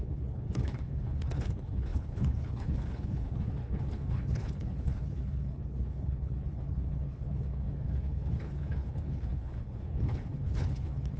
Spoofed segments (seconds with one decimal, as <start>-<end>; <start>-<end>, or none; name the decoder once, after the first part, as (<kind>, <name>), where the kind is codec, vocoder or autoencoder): 0.0-11.2 (codec, HILCodec)